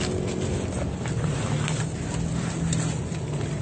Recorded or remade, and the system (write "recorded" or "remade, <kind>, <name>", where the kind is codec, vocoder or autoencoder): recorded